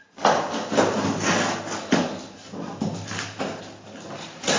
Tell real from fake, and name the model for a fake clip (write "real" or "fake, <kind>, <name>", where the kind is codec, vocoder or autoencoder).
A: real